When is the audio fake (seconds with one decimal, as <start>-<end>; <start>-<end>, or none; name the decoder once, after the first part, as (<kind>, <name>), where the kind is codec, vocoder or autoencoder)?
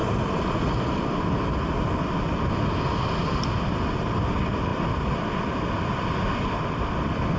none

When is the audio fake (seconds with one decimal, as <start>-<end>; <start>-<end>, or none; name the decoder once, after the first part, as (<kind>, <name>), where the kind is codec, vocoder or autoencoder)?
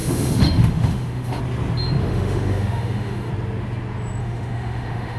0.0-1.4 (autoencoder, DAC-VAE); 2.0-3.3; 4.2-5.2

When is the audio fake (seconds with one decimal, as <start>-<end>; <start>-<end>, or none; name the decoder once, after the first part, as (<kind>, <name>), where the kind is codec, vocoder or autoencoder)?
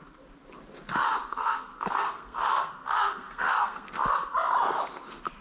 1.3-4.1 (codec, SNAC)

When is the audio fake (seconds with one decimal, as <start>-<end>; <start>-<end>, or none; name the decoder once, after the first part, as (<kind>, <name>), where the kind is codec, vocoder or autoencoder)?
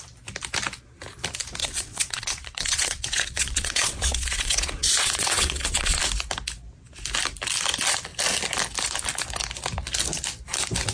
1.6-6.0 (vocoder, WaveNeXt)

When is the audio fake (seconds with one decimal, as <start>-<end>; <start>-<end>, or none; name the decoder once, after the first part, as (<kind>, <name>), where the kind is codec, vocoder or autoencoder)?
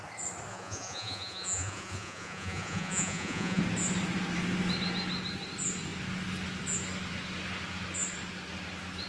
0.5-3.6 (vocoder, Vocos)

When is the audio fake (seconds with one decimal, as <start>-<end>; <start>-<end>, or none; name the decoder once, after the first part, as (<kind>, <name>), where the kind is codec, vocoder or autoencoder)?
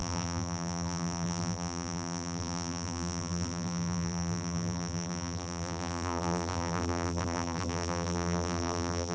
0.0-9.1 (vocoder, BigVGAN v2)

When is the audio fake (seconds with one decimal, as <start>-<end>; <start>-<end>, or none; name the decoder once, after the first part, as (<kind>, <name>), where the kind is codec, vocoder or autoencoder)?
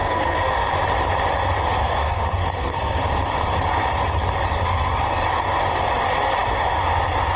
0.0-0.7 (codec, SNAC); 1.8-3.0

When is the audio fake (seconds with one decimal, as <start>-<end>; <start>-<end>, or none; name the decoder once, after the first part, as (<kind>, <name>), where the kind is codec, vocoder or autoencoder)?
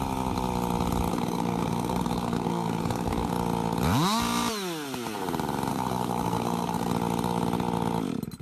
1.1-3.3 (codec, SNAC); 5.7-6.9